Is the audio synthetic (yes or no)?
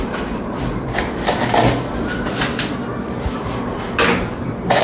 yes